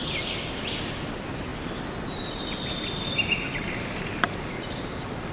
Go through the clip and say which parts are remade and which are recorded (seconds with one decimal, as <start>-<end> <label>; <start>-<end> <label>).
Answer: 0.0-1.5 recorded; 1.5-4.7 remade; 4.7-5.3 recorded